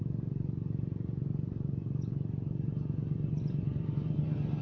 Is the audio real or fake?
fake